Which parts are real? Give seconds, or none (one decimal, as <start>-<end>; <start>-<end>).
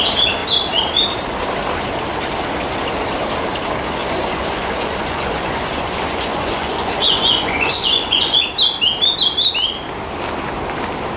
0.0-4.0; 8.4-11.2